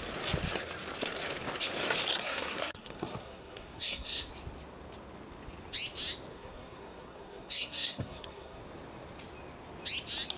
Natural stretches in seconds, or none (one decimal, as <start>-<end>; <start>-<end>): 0.0-2.1; 4.3-6.3; 8.6-10.4